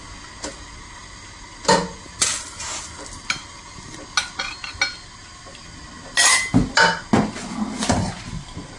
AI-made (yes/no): no